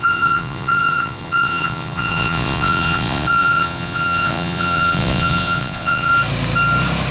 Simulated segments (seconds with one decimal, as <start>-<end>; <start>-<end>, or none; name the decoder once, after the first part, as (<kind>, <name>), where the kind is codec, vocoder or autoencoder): 0.0-6.1 (vocoder, Vocos)